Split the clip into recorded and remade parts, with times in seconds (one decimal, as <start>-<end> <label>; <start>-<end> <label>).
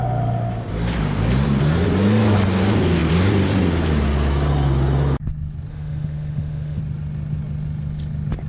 0.0-5.7 recorded; 5.7-6.8 remade; 6.8-8.5 recorded